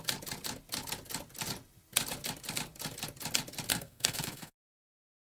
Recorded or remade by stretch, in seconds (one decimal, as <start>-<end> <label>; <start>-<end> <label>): 0.0-3.7 recorded; 3.7-5.3 remade